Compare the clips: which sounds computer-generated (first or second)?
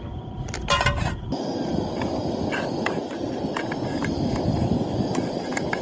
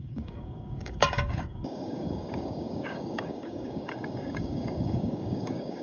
second